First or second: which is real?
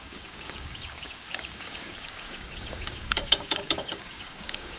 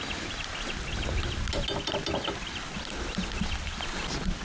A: second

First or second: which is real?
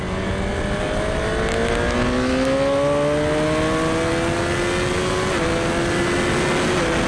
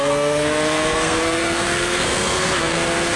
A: first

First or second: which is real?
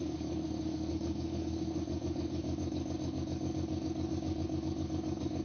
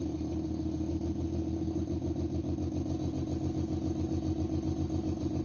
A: second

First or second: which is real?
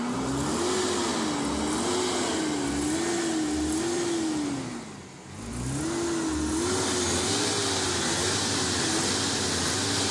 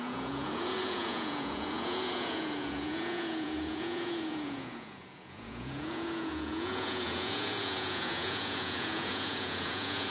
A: first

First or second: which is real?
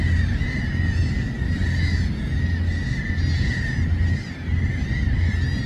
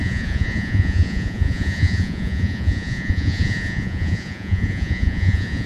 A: first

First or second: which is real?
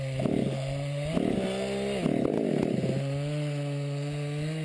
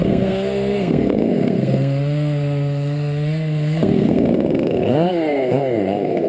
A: first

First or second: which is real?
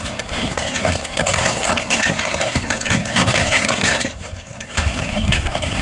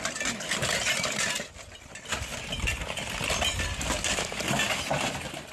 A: second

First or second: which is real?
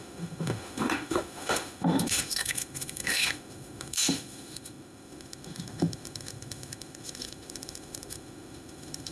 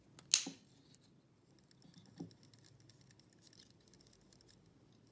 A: second